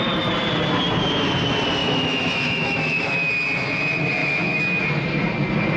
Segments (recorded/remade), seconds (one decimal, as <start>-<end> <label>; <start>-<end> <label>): 0.0-1.8 recorded; 1.8-3.3 remade; 3.3-4.2 recorded; 4.2-4.8 remade; 4.8-5.8 recorded